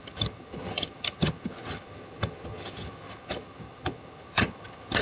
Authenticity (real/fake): fake